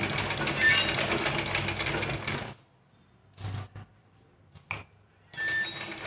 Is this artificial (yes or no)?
no